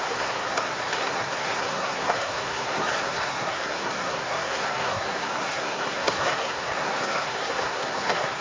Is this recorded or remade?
remade